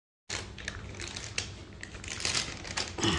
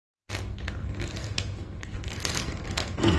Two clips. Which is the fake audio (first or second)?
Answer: second